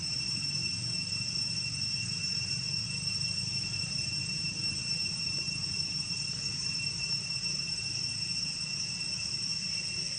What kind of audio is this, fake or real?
fake